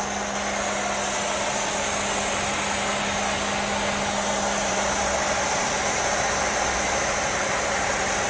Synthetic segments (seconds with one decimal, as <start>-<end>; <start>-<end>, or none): 4.7-8.3